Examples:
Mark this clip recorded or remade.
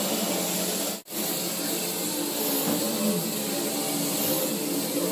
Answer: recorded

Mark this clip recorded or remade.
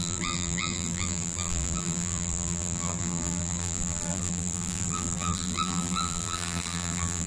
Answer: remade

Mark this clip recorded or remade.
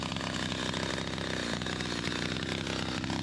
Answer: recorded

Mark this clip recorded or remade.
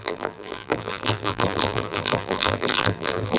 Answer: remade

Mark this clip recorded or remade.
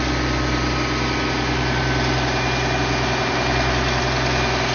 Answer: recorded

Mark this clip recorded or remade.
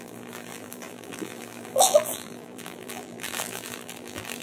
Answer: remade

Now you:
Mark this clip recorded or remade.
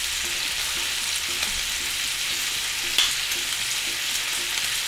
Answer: recorded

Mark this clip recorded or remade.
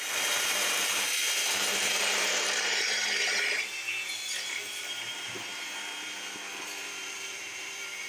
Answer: remade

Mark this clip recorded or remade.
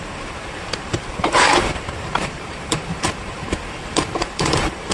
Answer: remade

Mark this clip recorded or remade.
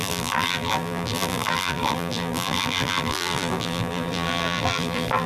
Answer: remade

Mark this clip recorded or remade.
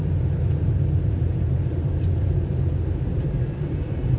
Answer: remade